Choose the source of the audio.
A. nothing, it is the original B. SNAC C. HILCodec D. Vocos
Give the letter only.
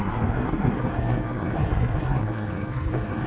B